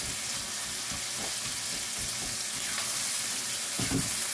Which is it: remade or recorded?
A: recorded